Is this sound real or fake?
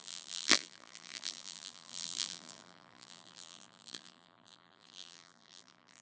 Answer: fake